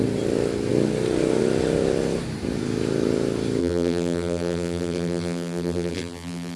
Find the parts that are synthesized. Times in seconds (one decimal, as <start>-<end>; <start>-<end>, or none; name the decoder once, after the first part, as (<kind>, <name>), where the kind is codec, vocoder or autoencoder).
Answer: 3.6-6.6 (vocoder, BigVGAN v2)